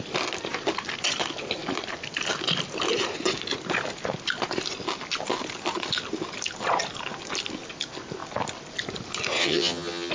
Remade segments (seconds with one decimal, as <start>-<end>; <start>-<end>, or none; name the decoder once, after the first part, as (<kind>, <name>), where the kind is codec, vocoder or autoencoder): 9.4-10.1 (vocoder, HiFi-GAN)